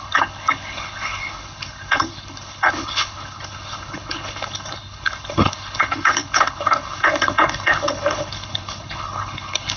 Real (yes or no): no